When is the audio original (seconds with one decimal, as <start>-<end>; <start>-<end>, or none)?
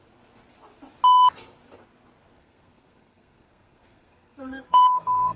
0.0-2.4